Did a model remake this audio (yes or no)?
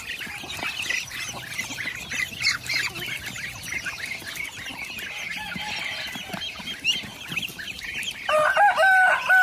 no